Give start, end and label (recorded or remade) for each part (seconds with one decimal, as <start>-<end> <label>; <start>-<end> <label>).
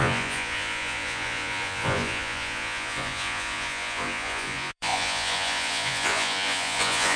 0.0-7.2 remade